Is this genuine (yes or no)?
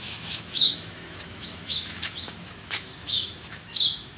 no